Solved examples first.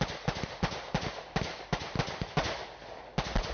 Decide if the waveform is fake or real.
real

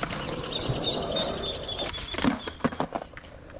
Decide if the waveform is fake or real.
real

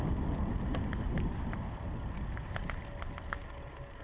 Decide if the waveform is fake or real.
real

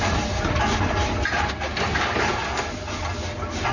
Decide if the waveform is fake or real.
real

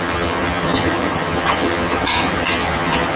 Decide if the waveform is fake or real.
fake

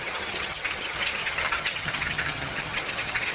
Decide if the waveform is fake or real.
fake